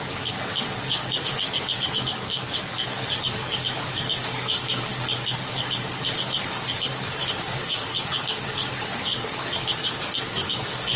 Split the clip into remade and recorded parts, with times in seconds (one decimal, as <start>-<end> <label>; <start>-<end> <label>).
0.0-11.0 remade